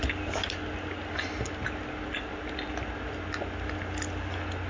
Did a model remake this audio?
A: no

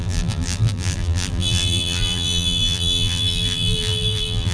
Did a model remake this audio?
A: yes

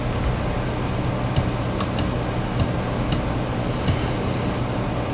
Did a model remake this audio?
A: no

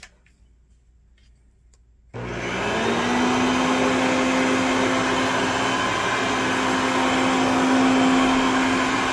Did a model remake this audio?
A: no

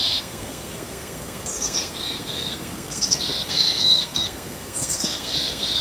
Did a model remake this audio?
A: yes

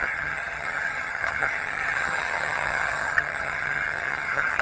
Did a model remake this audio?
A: yes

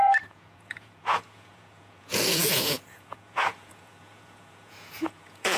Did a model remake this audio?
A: yes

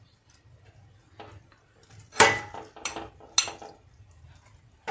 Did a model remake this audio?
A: no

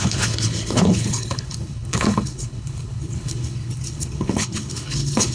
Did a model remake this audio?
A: yes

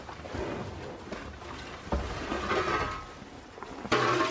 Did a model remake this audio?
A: no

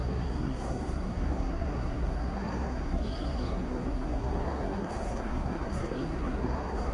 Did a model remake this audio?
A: yes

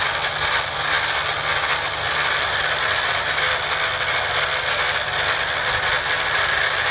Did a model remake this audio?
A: no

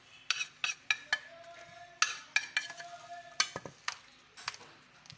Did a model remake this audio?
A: no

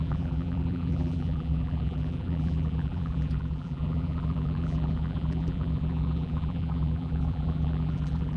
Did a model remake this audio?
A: yes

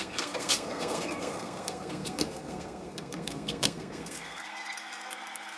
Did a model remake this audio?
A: yes